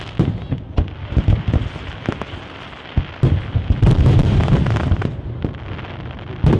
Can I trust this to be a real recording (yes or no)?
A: yes